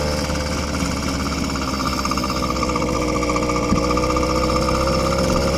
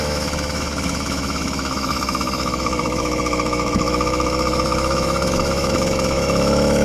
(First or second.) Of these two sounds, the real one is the first